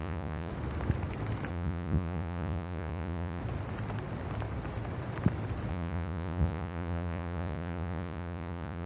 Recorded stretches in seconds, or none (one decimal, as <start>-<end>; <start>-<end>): 0.5-1.5; 3.4-5.7